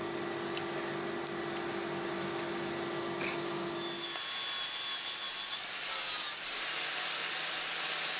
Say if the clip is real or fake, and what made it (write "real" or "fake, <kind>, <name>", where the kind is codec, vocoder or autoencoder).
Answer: real